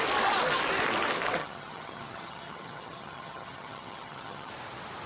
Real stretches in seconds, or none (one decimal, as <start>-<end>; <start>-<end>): 0.0-1.4; 4.5-5.1